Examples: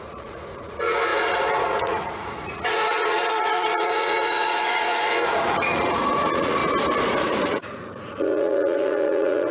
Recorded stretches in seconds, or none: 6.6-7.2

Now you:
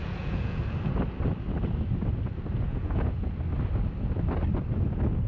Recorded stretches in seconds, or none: 0.6-2.7; 3.4-5.3

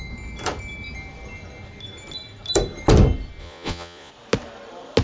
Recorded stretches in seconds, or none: 0.0-3.4; 4.1-5.0

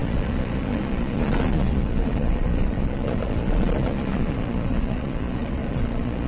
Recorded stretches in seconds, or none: none